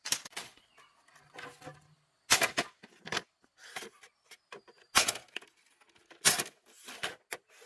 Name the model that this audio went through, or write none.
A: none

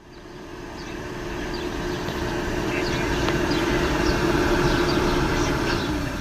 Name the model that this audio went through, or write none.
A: vocoder, BigVGAN v2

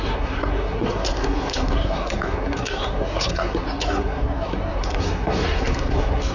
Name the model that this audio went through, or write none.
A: codec, SNAC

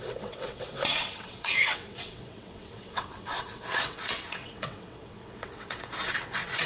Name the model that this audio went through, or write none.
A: vocoder, WaveNeXt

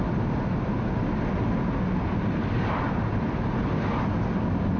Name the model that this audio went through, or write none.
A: none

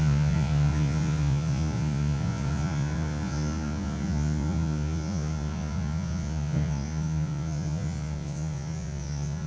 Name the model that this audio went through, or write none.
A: vocoder, Vocos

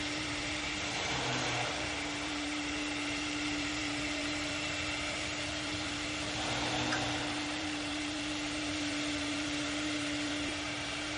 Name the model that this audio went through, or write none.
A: vocoder, BigVGAN v2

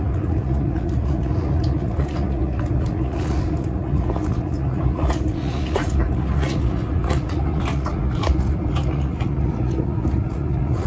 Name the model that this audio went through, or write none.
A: vocoder, Vocos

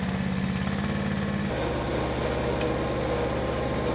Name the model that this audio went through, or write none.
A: none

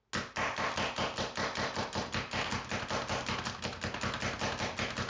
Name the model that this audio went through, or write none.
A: none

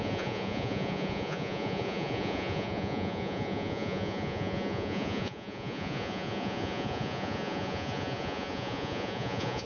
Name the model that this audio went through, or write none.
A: vocoder, Vocos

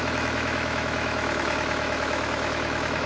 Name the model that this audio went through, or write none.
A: autoencoder, DAC-VAE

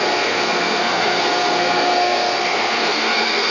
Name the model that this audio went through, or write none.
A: codec, SNAC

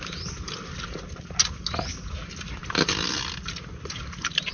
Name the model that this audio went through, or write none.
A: none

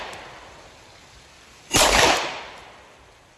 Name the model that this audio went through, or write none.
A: vocoder, BigVGAN v2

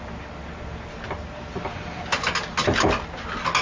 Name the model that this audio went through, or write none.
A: none